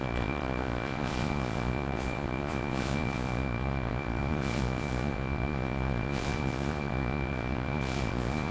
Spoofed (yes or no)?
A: yes